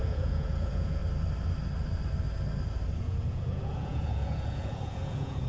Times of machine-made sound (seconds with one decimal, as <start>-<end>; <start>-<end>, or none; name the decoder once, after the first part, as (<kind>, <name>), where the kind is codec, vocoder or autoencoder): 0.0-1.0 (vocoder, Vocos); 3.0-5.5